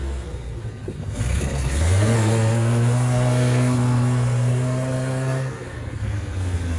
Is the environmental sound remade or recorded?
remade